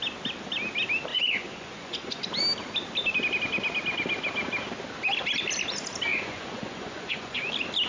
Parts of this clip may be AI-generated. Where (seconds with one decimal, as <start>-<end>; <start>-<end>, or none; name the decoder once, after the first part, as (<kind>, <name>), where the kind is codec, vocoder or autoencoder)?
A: 1.1-2.2 (vocoder, Vocos); 6.1-7.5